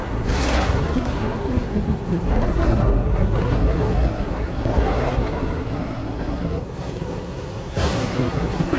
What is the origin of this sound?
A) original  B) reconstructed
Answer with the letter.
B